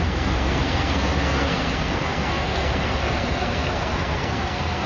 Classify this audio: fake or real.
fake